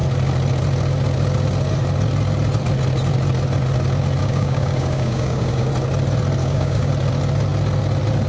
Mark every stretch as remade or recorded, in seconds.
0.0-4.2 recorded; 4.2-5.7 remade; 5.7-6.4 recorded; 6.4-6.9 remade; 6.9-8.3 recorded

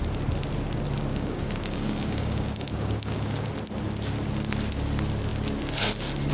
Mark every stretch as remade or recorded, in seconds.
0.0-1.1 recorded; 1.1-3.5 remade; 3.5-6.3 recorded

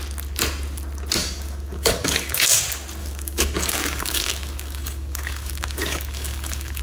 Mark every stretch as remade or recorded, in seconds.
0.0-1.2 recorded; 1.2-2.6 remade; 2.6-3.0 recorded; 3.0-6.8 remade